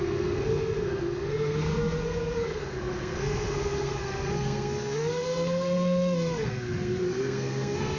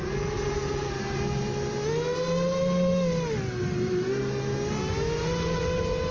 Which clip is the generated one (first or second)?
first